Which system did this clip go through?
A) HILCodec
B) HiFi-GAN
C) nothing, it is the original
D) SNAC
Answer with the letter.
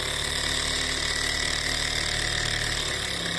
C